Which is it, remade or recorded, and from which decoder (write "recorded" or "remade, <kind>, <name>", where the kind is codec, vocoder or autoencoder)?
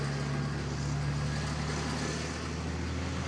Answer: recorded